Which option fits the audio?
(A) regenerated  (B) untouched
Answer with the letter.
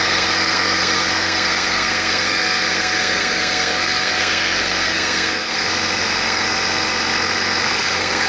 A